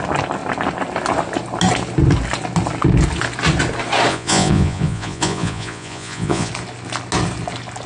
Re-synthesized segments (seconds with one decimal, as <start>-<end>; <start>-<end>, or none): 4.1-6.5

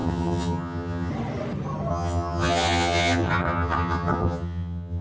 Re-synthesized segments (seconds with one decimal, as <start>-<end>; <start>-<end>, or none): 0.0-1.1; 1.9-5.0